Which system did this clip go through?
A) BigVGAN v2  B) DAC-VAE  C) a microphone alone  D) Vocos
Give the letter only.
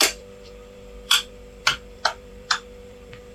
A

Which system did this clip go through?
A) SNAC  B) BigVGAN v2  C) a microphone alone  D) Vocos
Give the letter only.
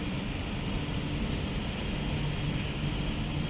C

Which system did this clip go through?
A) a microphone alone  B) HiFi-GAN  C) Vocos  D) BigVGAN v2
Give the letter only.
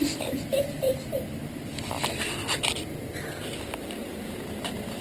D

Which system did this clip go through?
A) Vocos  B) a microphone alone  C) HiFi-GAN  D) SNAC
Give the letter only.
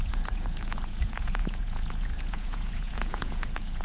A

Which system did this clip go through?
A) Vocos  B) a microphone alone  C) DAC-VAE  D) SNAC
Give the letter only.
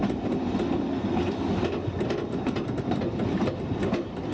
B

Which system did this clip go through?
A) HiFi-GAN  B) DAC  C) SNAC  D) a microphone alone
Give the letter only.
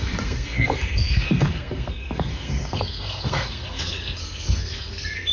C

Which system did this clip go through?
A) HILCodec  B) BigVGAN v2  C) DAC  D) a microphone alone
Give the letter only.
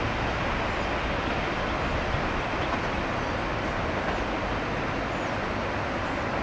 D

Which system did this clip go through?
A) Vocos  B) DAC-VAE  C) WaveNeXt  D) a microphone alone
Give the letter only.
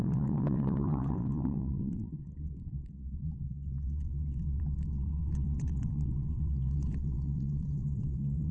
C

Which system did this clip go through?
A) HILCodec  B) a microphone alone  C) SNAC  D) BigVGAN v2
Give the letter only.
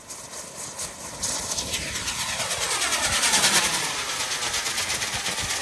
B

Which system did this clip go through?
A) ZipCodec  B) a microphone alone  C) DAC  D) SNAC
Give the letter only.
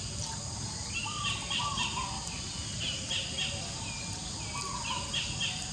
B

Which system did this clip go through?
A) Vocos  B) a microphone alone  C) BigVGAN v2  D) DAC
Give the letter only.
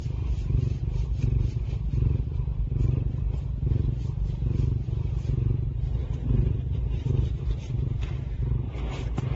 C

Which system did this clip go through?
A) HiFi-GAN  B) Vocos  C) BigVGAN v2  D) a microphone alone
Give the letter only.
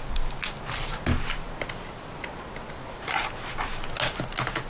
D